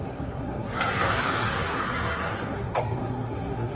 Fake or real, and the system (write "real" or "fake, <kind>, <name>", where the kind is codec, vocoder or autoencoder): fake, codec, SNAC